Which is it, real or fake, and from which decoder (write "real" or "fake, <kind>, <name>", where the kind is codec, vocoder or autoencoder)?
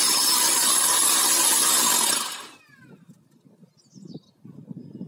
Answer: real